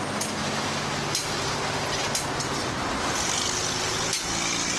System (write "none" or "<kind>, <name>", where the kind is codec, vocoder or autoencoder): none